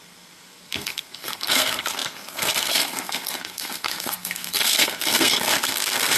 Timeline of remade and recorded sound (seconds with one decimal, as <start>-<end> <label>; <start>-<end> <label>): 0.0-6.2 remade